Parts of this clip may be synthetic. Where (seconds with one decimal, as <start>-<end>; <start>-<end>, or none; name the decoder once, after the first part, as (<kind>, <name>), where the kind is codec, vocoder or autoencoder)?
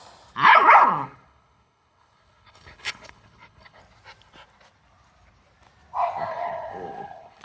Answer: 0.5-3.8 (codec, HILCodec); 6.3-7.4